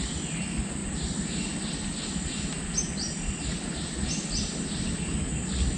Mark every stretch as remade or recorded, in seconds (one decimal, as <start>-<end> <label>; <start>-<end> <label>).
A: 0.0-5.8 recorded